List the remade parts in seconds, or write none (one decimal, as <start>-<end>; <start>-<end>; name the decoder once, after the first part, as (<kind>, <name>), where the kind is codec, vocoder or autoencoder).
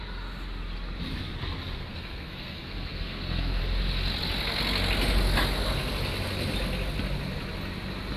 1.8-3.6 (codec, SNAC)